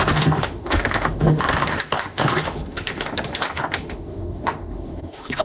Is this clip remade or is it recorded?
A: remade